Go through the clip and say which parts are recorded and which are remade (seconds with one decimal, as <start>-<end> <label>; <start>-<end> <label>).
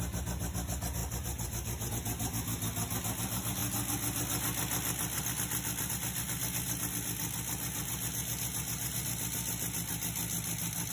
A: 0.0-1.0 recorded; 1.0-1.9 remade; 1.9-10.9 recorded